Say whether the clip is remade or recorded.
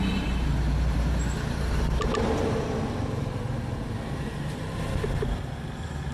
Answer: remade